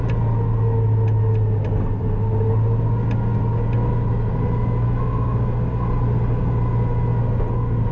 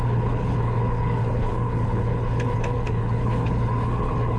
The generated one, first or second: second